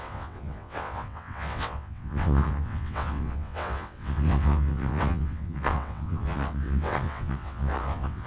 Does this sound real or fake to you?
fake